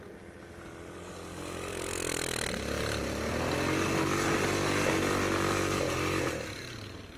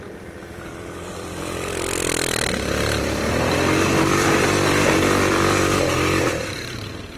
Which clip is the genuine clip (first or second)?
first